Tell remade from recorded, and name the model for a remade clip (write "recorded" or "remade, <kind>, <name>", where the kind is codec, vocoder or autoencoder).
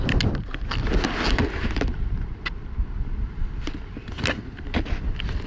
recorded